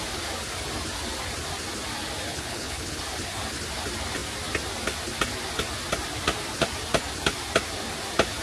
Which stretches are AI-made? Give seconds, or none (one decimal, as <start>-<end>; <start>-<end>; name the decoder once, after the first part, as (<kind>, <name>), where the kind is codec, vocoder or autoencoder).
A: 2.3-3.0 (codec, HILCodec)